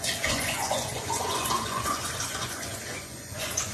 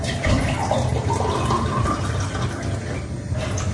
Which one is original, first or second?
second